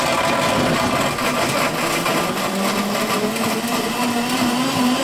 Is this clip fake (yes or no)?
no